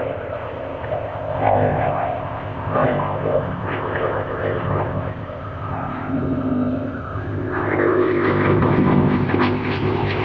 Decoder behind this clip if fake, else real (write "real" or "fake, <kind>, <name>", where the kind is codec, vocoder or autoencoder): fake, codec, ZipCodec